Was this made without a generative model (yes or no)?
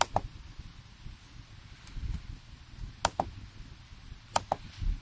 yes